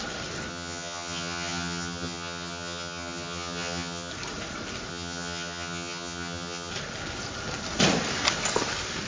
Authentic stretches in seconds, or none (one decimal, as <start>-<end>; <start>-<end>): 0.0-0.5; 4.1-4.9; 6.7-9.1